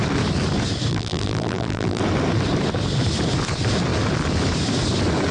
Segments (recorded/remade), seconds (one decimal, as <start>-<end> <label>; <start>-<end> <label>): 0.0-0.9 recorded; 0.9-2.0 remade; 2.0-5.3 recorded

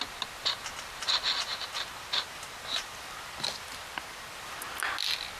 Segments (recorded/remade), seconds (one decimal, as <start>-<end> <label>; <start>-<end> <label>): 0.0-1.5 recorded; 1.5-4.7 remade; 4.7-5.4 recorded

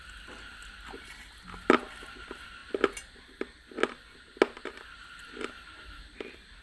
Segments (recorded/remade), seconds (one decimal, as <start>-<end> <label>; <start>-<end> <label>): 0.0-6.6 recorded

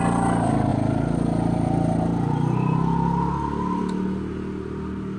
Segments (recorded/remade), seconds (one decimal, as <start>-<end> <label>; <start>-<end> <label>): 0.0-5.2 recorded